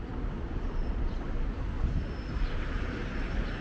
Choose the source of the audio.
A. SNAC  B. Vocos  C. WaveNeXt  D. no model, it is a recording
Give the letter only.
D